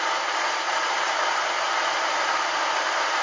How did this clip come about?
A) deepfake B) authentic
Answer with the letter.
A